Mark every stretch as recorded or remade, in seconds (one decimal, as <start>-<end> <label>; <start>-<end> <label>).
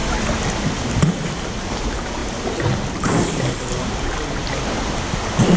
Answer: 0.0-5.6 recorded